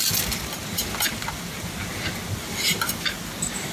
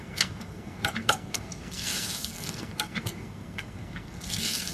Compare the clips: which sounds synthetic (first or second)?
second